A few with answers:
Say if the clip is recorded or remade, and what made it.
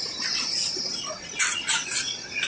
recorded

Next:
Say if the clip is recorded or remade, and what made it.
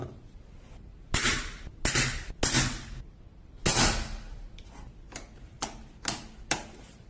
recorded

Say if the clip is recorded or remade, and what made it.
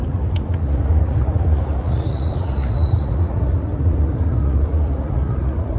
remade, vocoder, Vocos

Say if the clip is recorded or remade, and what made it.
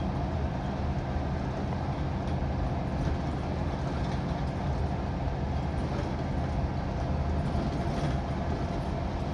recorded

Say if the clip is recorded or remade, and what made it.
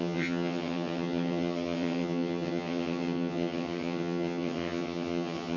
remade, vocoder, HiFi-GAN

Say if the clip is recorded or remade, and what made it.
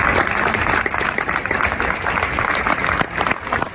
recorded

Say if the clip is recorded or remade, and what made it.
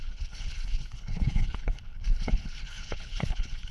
remade, codec, HILCodec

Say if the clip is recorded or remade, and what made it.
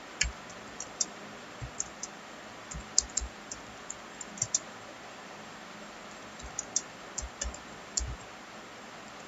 recorded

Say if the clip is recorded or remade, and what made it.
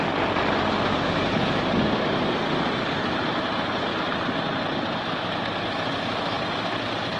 recorded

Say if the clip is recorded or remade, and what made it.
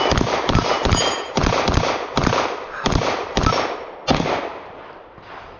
recorded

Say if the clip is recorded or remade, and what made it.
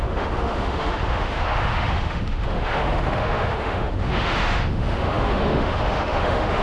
remade, autoencoder, DAC-VAE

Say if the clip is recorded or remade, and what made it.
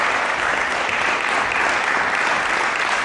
recorded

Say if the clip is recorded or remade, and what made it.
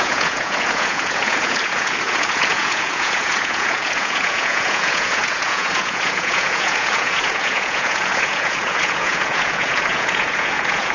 remade, vocoder, Vocos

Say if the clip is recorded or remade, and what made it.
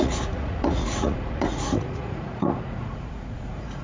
remade, vocoder, Vocos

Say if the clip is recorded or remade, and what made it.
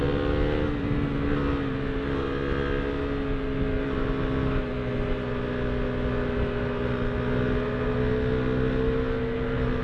recorded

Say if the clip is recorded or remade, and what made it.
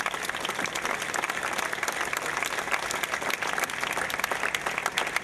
recorded